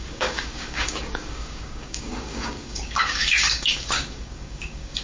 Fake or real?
fake